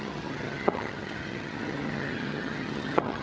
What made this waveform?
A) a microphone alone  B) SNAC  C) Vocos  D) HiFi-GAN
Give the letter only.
D